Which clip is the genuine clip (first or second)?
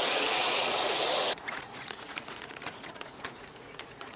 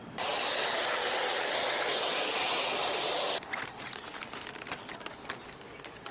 second